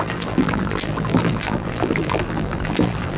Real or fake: fake